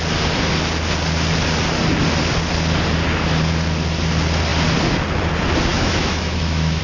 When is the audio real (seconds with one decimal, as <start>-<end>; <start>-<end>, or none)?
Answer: 0.0-5.7